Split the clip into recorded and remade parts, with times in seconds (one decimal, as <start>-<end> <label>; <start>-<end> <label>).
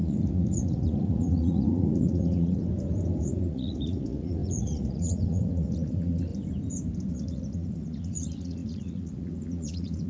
0.0-2.6 remade; 2.6-3.2 recorded; 3.2-6.3 remade; 6.3-7.1 recorded; 7.1-10.1 remade